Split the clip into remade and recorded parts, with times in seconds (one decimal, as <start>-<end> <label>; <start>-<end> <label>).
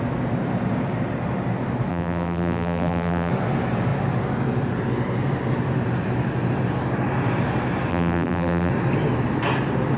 0.0-1.9 recorded; 1.9-3.3 remade; 3.3-7.9 recorded; 7.9-8.7 remade; 8.7-10.0 recorded